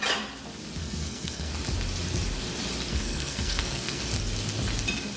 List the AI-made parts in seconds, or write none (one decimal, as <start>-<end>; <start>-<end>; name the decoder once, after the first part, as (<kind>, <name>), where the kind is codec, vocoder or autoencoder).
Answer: 0.8-1.5 (codec, SNAC); 2.9-4.0